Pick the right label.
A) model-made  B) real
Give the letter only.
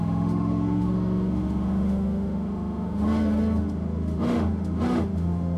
A